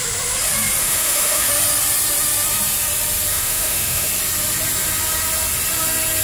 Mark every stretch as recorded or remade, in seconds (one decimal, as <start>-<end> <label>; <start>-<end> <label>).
0.0-0.8 recorded; 0.8-1.5 remade; 1.5-3.3 recorded; 3.3-4.1 remade; 4.1-6.2 recorded